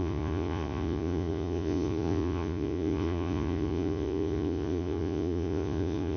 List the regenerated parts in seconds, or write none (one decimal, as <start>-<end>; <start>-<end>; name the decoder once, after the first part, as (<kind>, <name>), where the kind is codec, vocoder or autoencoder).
0.0-6.2 (vocoder, Vocos)